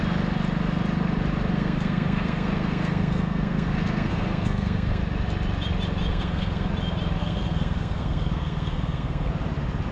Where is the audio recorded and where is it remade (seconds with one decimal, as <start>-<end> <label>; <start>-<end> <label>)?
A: 0.0-1.5 recorded; 1.5-5.0 remade; 5.0-6.1 recorded; 6.1-6.7 remade; 6.7-7.2 recorded; 7.2-9.3 remade; 9.3-9.9 recorded